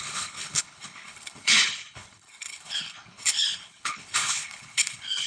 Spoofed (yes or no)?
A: yes